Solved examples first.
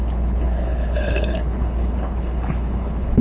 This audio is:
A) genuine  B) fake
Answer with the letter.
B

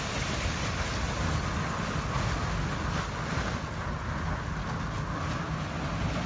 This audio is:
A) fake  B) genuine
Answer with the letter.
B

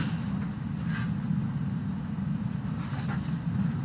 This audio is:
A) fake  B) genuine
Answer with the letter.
B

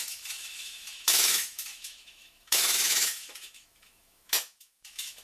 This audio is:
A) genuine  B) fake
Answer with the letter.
B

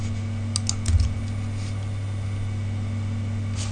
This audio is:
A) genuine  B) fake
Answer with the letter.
A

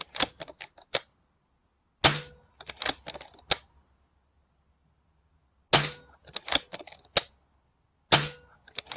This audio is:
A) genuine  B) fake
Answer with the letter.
A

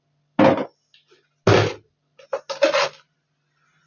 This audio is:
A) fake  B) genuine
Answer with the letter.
B